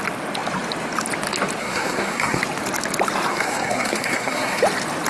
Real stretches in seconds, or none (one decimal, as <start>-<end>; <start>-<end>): 0.0-1.6; 2.4-3.3; 4.6-5.1

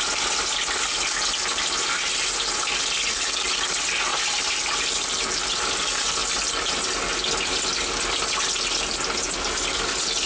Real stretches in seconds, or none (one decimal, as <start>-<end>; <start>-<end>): 0.0-10.3

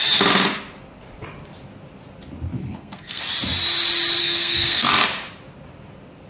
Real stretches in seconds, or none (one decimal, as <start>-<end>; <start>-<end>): 0.0-2.6; 3.2-4.2; 4.9-6.3

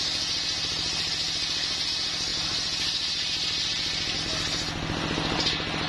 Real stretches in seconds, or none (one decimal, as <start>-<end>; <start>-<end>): 0.0-5.9